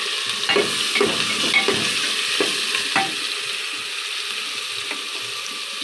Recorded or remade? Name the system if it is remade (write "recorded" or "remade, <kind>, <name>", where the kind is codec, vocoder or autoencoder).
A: recorded